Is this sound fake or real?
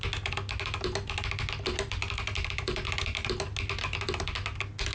real